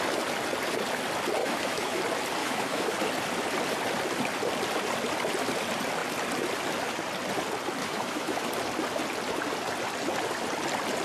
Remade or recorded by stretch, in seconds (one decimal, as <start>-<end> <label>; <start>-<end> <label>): 0.0-1.4 recorded; 1.4-2.0 remade; 2.0-2.4 recorded; 2.4-2.9 remade; 2.9-7.8 recorded; 7.8-8.5 remade; 8.5-11.0 recorded